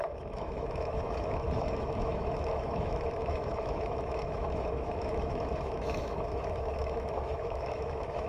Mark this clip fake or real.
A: fake